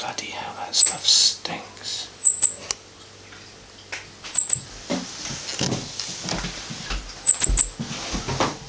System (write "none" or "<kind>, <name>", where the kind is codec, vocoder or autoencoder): none